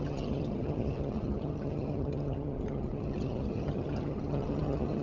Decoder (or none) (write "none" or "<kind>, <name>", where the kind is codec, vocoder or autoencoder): vocoder, HiFi-GAN